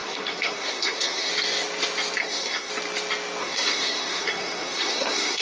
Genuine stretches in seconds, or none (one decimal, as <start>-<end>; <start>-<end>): 1.3-2.2; 2.7-3.4